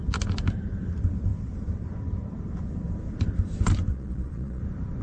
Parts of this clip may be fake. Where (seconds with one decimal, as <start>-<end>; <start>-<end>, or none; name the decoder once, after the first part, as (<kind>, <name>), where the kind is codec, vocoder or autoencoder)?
3.9-4.6 (vocoder, Vocos)